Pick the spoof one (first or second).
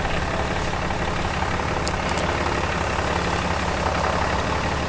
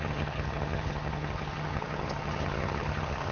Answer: second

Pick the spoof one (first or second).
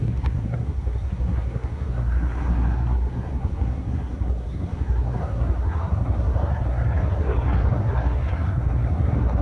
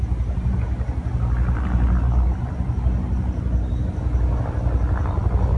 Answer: first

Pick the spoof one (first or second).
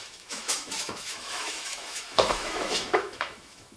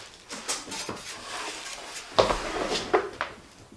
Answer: first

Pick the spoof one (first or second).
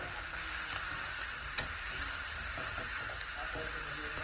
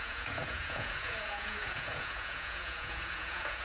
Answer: second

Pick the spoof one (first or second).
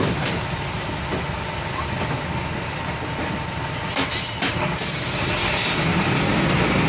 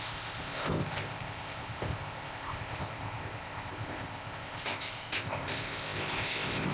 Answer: second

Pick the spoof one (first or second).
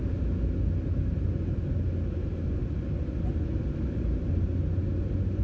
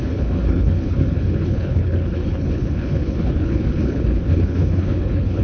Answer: second